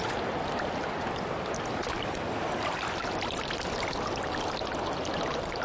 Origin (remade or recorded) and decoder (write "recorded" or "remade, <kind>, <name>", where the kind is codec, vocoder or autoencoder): recorded